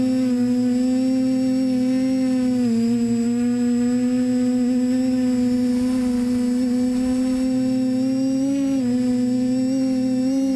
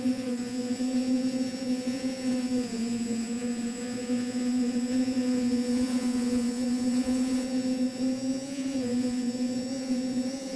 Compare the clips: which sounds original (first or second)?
first